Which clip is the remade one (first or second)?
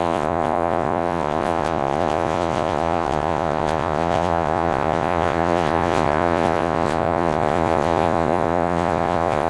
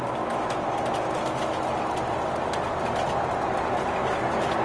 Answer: first